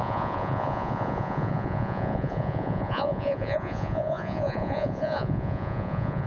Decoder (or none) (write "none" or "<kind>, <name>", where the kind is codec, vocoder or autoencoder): vocoder, Vocos